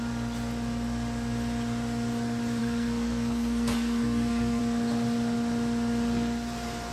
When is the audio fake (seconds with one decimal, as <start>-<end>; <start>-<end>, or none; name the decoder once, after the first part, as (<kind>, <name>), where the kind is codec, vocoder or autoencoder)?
2.6-4.6 (codec, SNAC)